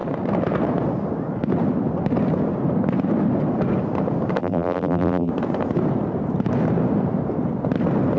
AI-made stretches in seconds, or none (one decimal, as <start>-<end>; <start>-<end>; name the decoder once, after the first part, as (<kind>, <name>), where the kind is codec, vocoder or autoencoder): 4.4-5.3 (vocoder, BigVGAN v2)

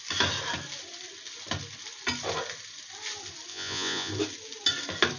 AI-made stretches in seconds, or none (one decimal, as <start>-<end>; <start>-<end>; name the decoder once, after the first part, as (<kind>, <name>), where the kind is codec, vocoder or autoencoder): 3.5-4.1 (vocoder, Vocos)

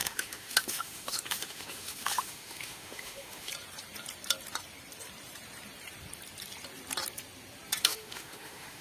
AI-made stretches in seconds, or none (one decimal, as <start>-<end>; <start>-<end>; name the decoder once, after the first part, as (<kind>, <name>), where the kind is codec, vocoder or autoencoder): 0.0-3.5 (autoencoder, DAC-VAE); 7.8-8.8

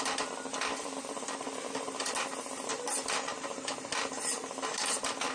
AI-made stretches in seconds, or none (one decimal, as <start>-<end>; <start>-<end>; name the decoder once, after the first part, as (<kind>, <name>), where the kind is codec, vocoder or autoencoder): none